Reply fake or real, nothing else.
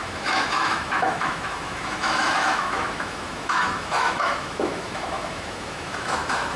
fake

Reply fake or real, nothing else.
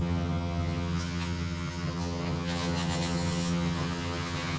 fake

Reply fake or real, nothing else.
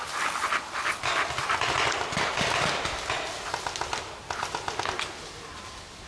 real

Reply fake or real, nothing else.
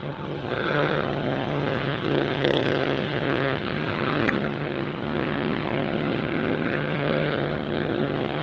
fake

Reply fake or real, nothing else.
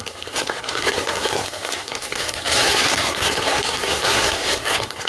fake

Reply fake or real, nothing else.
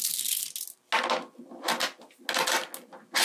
real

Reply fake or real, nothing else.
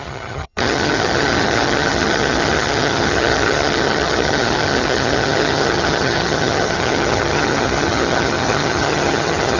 fake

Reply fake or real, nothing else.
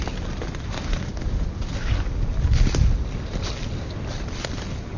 real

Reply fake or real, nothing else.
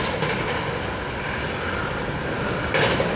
real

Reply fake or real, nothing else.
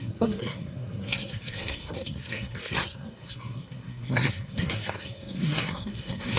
fake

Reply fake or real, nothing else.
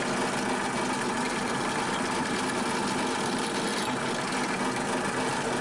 real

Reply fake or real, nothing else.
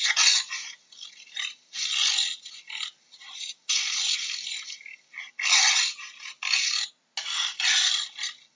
real